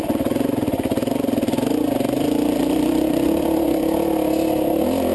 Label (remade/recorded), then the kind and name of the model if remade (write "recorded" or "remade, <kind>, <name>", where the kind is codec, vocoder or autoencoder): recorded